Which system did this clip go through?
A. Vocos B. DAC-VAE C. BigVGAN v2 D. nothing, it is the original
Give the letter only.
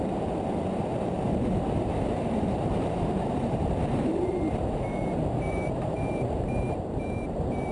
C